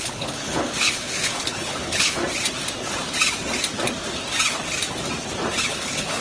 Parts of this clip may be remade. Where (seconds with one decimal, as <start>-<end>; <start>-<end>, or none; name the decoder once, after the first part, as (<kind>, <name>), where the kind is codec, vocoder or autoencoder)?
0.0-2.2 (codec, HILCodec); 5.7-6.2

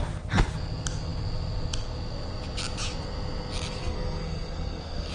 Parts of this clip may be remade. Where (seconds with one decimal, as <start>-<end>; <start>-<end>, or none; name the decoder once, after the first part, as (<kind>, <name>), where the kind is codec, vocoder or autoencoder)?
3.8-5.1 (codec, SNAC)

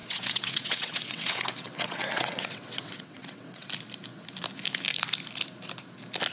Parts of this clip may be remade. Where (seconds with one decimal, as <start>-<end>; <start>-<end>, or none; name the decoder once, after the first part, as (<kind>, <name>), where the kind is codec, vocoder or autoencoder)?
0.0-3.7 (vocoder, WaveNeXt)

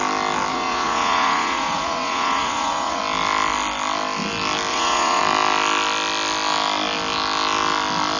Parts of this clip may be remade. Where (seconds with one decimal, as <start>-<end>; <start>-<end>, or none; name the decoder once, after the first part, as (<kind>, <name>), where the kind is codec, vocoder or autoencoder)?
0.5-3.0 (vocoder, Vocos); 4.7-5.2